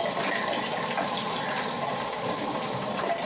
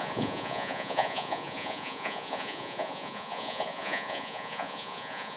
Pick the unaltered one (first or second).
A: first